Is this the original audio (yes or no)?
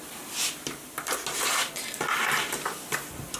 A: yes